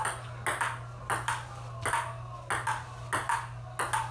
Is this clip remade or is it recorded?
recorded